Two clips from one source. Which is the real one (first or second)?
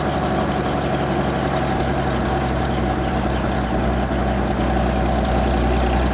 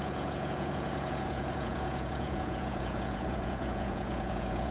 first